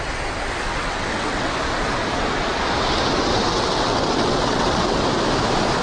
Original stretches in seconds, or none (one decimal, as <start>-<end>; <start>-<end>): 0.0-0.7; 1.5-3.5; 5.0-5.8